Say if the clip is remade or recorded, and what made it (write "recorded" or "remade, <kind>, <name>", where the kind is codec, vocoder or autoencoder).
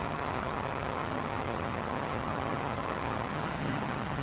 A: remade, vocoder, HiFi-GAN